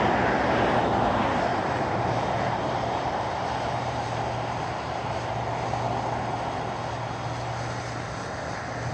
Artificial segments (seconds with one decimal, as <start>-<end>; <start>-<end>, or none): 1.5-5.5